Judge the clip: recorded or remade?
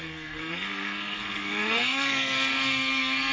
remade